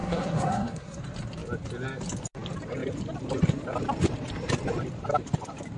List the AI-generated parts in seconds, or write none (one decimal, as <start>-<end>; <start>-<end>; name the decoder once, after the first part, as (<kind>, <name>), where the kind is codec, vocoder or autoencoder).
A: 0.0-1.0 (codec, SNAC)